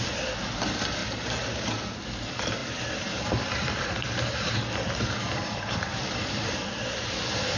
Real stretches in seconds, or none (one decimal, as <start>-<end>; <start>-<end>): 0.0-1.0; 1.8-2.6